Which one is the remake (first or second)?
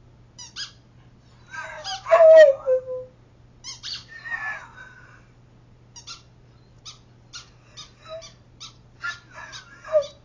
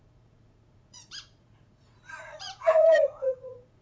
second